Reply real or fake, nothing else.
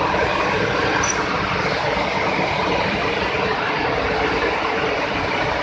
fake